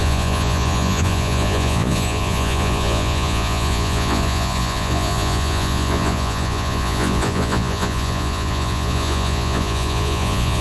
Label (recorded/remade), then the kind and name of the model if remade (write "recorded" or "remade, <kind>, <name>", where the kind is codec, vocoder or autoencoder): remade, vocoder, Vocos